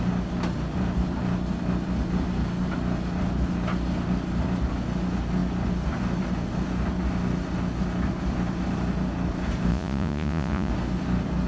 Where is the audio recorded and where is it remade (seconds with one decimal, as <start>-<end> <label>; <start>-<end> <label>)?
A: 0.0-9.7 recorded; 9.7-10.7 remade; 10.7-11.5 recorded